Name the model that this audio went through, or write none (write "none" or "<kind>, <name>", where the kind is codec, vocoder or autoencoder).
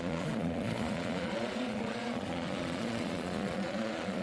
vocoder, Vocos